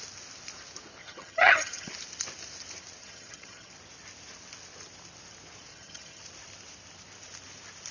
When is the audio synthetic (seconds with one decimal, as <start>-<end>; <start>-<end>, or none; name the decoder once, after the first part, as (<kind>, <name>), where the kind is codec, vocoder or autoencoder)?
1.0-1.9 (vocoder, HiFi-GAN); 3.0-3.7; 5.7-6.2